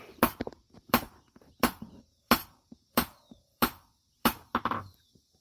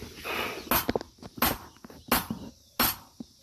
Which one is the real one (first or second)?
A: second